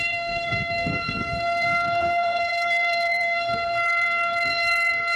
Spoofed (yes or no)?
yes